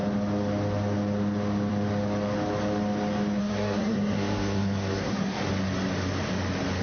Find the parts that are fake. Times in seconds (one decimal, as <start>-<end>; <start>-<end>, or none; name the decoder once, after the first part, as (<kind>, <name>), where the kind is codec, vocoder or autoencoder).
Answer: 3.4-5.5 (codec, SNAC)